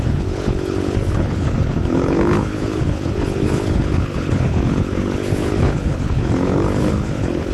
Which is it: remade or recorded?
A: remade